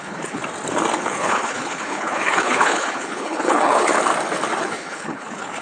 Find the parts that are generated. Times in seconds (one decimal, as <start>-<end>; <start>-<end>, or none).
0.0-0.4; 1.0-3.9; 4.6-5.6